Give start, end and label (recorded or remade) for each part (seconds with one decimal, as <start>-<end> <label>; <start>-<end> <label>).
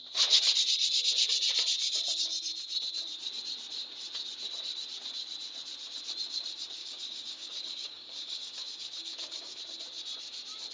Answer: 0.0-6.8 recorded; 6.8-9.6 remade; 9.6-10.7 recorded